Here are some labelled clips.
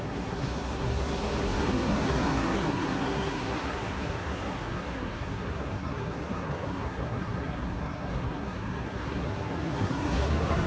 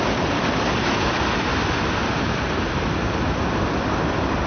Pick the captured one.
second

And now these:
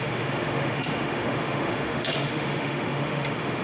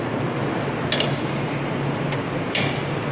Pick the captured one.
second